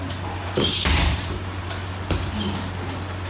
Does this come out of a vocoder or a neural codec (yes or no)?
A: no